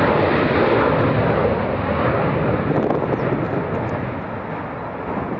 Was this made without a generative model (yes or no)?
yes